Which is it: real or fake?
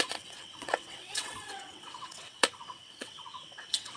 fake